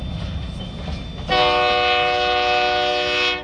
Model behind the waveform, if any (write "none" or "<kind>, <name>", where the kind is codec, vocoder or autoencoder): none